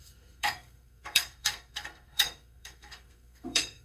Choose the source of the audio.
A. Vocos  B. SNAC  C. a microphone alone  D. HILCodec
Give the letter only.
B